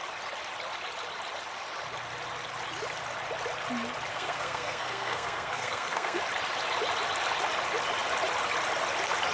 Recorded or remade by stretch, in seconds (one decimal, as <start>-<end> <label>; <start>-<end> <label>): 0.0-4.1 recorded; 4.1-6.2 remade; 6.2-9.3 recorded